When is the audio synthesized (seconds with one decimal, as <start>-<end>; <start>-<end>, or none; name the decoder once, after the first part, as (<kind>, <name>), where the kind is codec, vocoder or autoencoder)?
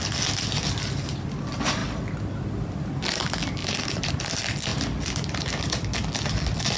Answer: 3.6-4.1 (vocoder, BigVGAN v2)